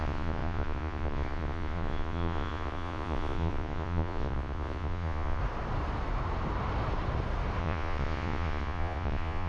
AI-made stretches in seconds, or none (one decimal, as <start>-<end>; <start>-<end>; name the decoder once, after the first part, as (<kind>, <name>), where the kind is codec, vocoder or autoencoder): 0.0-5.4 (vocoder, Vocos); 7.6-9.5

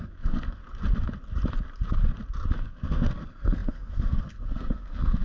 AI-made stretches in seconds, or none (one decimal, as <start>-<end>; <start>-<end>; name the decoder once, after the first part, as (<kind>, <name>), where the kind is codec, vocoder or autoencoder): 0.0-0.6 (codec, SNAC); 2.6-5.2